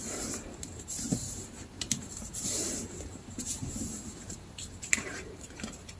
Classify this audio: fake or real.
fake